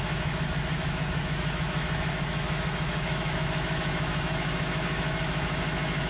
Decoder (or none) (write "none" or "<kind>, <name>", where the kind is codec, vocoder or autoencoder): autoencoder, DAC-VAE